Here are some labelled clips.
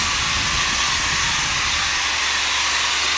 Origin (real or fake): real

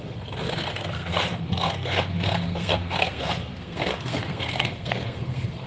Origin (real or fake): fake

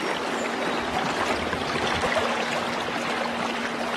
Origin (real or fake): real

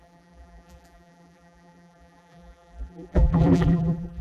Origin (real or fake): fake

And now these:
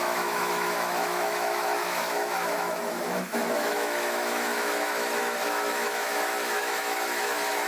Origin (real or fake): fake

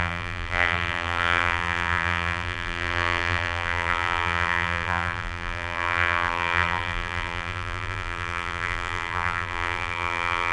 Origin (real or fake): fake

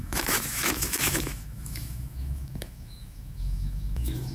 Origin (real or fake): fake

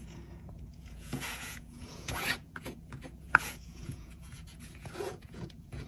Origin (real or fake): fake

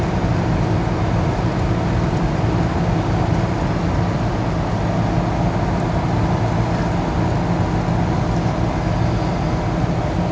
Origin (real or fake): real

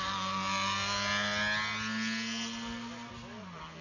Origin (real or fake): real